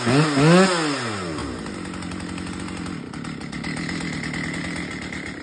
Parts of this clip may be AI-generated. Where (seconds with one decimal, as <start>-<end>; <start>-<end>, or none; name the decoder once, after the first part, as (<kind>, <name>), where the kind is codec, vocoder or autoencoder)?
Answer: none

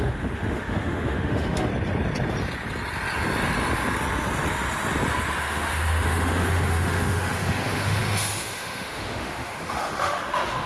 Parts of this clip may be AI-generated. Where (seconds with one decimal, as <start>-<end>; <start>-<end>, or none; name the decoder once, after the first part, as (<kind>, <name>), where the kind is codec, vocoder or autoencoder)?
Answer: 0.0-1.7 (autoencoder, DAC-VAE); 5.4-10.7

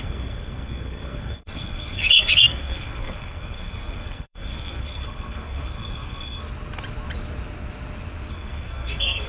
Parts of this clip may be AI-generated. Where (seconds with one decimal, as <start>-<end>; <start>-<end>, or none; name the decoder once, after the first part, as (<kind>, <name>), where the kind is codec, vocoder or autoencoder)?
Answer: 0.0-6.4 (codec, SNAC); 8.3-9.3

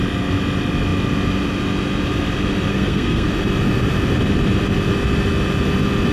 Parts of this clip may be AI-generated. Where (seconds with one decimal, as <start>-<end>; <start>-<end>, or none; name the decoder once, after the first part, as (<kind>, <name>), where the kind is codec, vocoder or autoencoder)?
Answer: 2.7-3.3 (codec, SNAC)

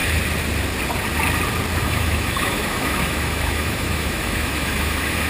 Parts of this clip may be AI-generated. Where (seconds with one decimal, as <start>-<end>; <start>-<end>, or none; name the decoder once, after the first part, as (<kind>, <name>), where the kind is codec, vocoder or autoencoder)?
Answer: 1.8-5.3 (autoencoder, DAC-VAE)

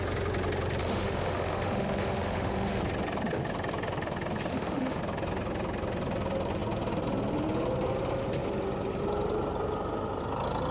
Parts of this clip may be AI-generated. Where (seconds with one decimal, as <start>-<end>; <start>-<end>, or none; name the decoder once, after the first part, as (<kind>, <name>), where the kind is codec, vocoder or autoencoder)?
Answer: 0.8-2.8 (autoencoder, DAC-VAE); 4.5-5.0